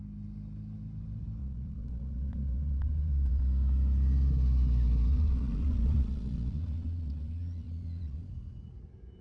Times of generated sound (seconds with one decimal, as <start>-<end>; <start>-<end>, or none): 1.4-3.4; 5.1-8.3